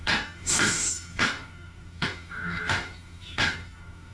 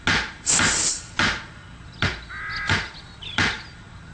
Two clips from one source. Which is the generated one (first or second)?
first